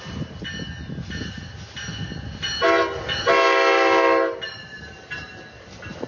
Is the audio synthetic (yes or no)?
no